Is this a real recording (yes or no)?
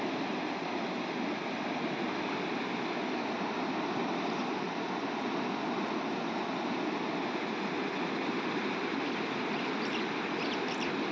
yes